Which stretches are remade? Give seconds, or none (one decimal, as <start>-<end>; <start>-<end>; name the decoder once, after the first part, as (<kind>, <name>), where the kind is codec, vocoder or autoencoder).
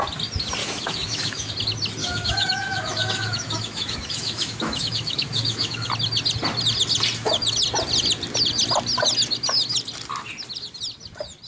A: 0.6-1.5 (autoencoder, DAC-VAE); 2.0-5.9